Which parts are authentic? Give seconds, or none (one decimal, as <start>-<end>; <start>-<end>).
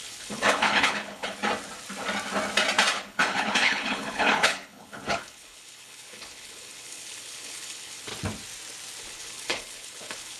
1.4-2.9; 8.1-9.0